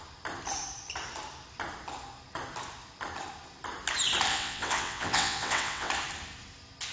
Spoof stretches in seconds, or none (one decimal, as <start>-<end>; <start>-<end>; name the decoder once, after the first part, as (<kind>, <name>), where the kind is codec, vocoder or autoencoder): 4.3-5.9 (vocoder, WaveNeXt)